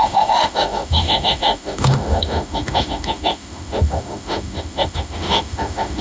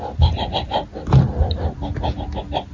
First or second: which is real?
second